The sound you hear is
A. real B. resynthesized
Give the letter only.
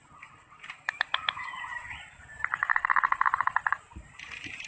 B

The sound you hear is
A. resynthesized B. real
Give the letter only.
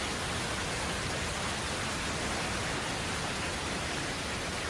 B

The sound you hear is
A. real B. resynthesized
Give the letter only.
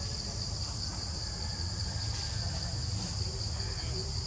A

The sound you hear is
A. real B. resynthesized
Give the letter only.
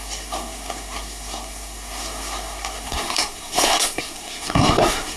B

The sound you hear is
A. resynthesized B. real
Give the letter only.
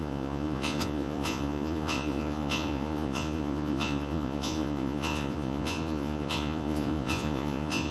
A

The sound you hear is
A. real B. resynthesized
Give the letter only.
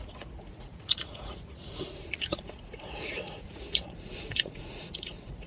B